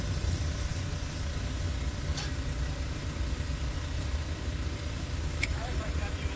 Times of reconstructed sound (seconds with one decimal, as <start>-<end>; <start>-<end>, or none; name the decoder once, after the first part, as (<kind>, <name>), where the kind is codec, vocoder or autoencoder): 0.0-0.7 (vocoder, BigVGAN v2); 2.7-6.4